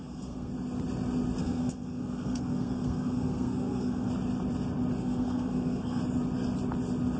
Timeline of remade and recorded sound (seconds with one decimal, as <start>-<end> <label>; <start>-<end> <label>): 0.0-0.5 remade; 0.5-1.4 recorded; 1.4-4.1 remade; 4.1-5.0 recorded; 5.0-6.0 remade; 6.0-7.2 recorded